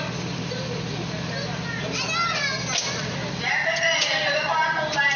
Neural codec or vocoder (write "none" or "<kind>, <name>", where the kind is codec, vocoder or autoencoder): none